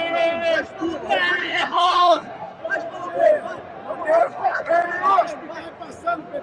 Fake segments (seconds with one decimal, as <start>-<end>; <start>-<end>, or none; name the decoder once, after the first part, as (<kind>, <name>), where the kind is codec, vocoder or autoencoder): 1.4-2.6 (codec, SNAC); 4.2-4.7